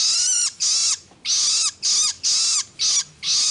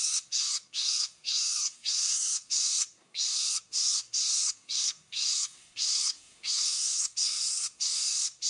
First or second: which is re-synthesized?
second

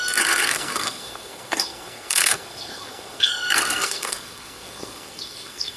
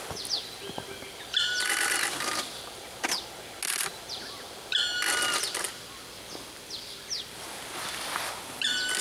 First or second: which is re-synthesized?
first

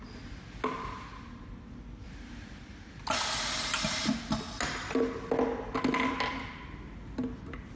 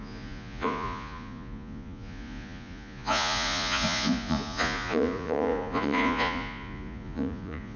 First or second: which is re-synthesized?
second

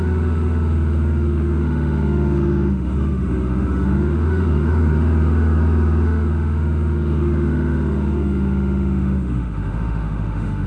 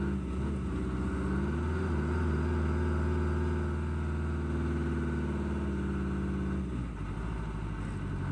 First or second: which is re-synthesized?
first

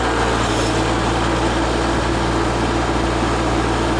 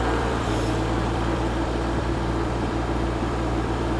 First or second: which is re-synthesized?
second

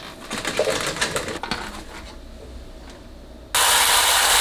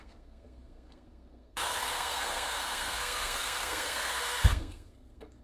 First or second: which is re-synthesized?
second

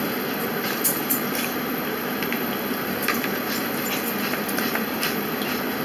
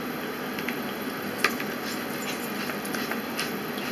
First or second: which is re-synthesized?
first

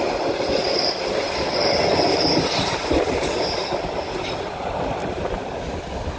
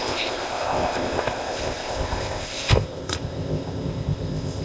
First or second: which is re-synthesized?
second